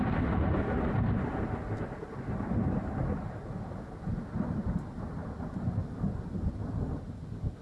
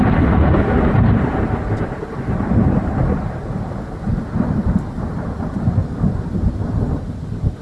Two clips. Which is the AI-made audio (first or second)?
second